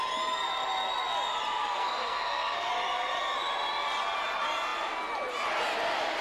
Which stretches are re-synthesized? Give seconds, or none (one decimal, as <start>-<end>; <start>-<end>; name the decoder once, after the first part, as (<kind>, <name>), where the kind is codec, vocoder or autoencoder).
1.6-2.7 (codec, SNAC)